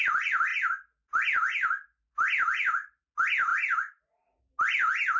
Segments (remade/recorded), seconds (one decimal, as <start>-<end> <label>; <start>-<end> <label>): 0.0-5.2 recorded